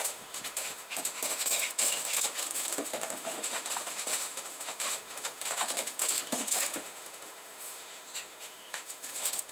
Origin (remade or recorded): remade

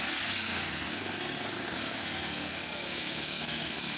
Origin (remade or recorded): remade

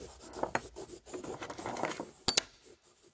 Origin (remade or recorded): recorded